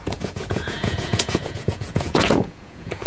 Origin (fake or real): fake